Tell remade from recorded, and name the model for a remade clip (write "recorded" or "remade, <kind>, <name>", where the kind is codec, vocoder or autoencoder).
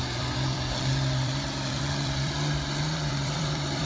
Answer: remade, vocoder, BigVGAN v2